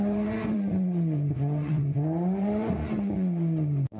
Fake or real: fake